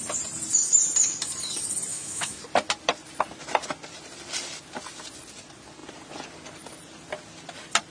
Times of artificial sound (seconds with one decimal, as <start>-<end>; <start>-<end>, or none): 1.9-2.4